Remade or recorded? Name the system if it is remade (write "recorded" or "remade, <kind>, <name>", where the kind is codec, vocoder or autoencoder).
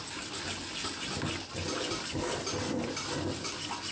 recorded